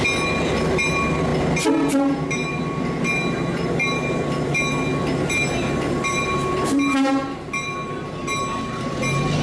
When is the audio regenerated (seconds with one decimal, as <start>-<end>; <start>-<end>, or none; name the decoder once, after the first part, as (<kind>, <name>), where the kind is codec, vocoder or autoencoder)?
none